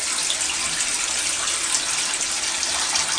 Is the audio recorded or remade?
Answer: recorded